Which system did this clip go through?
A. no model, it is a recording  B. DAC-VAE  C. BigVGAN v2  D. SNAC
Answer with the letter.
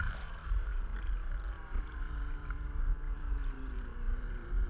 C